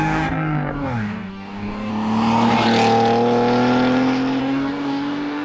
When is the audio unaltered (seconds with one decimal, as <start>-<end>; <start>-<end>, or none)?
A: 1.9-4.4